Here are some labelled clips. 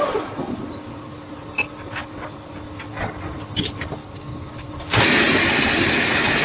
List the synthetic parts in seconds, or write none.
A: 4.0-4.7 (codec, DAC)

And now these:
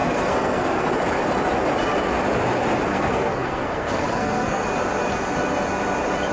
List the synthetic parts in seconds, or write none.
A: 0.0-0.9 (codec, SNAC); 2.9-4.6

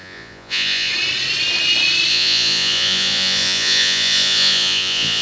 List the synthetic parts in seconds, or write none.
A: 0.0-0.9 (vocoder, Vocos); 2.1-5.2

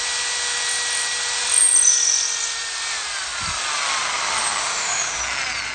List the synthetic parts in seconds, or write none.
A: 4.6-5.2 (autoencoder, DAC-VAE)

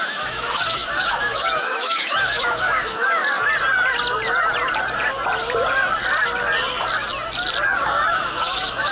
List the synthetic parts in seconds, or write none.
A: 0.0-3.2 (autoencoder, DAC-VAE); 8.1-8.9

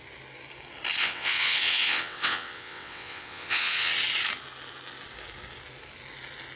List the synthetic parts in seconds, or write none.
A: 1.0-3.9 (vocoder, WaveNeXt)

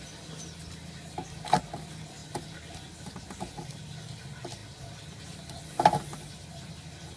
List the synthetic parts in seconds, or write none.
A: none